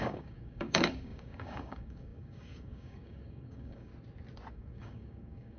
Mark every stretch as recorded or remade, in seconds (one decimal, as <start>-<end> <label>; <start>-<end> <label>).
0.0-3.9 remade; 3.9-4.5 recorded; 4.5-5.6 remade